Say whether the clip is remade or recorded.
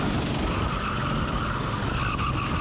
recorded